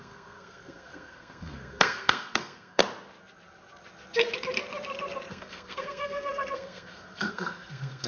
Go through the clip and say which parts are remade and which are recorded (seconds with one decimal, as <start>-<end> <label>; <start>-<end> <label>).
0.0-2.8 remade; 2.8-5.3 recorded; 5.3-8.1 remade